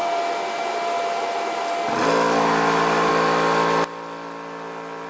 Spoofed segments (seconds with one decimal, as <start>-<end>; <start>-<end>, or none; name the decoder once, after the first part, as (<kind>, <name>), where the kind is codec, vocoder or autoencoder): none